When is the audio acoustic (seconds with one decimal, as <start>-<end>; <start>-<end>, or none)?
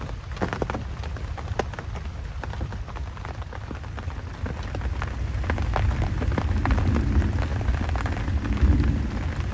0.0-9.5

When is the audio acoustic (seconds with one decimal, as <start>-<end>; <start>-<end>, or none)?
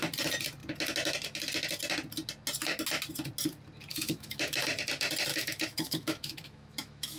0.0-3.9; 4.6-5.3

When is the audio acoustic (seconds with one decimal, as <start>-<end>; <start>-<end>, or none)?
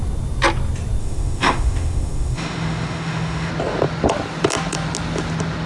0.0-1.0; 3.5-5.7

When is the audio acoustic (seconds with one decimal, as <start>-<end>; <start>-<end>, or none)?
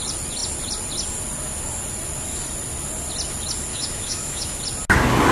0.0-3.7; 4.6-5.3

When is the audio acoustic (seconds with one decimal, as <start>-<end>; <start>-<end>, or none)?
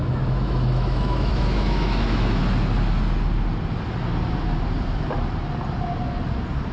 2.4-6.7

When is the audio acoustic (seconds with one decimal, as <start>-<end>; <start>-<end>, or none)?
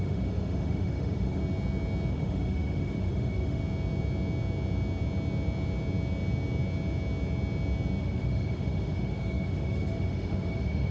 1.4-2.1; 3.6-8.0